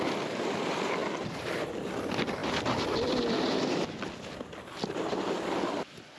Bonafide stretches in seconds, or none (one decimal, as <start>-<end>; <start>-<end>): 0.0-6.2